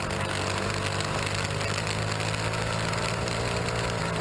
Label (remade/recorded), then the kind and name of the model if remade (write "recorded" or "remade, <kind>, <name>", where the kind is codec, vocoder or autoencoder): recorded